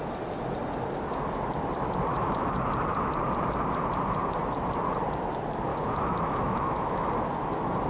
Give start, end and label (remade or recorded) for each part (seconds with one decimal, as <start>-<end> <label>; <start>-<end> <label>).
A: 0.0-2.1 recorded; 2.1-2.6 remade; 2.6-5.7 recorded; 5.7-7.1 remade; 7.1-7.9 recorded

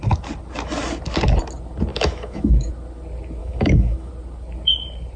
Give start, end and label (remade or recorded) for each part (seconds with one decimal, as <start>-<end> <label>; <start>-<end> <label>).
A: 0.0-1.9 recorded; 1.9-2.7 remade; 2.7-3.4 recorded; 3.4-4.1 remade; 4.1-5.2 recorded

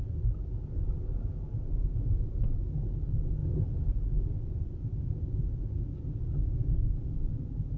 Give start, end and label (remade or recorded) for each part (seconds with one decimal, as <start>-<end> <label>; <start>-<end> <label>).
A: 0.0-7.8 recorded

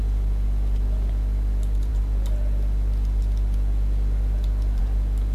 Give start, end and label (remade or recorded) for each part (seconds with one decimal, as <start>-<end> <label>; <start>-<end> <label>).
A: 0.0-5.3 recorded

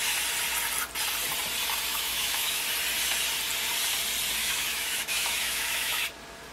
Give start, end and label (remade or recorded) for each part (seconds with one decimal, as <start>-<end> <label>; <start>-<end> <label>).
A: 0.0-1.9 recorded; 1.9-2.6 remade; 2.6-4.4 recorded; 4.4-6.0 remade; 6.0-6.5 recorded

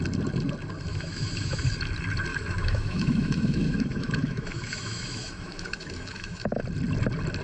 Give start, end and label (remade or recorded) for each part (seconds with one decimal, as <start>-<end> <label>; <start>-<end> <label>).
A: 0.0-0.9 recorded; 0.9-1.6 remade; 1.6-2.3 recorded; 2.3-6.6 remade; 6.6-7.4 recorded

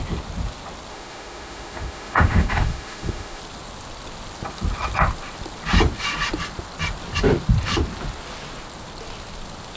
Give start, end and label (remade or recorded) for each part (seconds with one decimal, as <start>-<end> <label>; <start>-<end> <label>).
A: 0.0-0.9 recorded; 0.9-3.4 remade; 3.4-9.8 recorded